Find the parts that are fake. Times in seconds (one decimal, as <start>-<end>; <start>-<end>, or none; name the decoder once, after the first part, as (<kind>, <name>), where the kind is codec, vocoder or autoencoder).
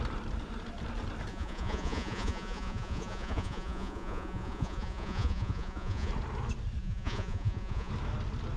1.3-6.1 (vocoder, Vocos); 6.8-7.9